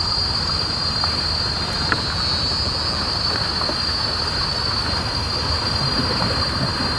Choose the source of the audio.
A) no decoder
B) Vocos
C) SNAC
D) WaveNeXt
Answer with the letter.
A